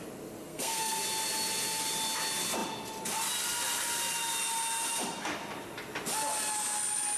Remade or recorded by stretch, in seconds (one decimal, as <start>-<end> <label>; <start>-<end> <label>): 0.0-0.5 recorded; 0.5-1.0 remade; 1.0-7.2 recorded